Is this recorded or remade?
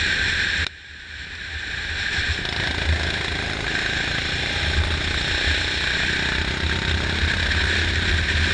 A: recorded